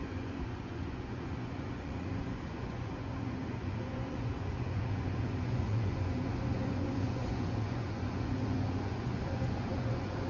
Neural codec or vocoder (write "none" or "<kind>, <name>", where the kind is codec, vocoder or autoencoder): vocoder, Vocos